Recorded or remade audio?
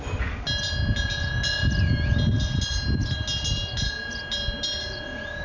recorded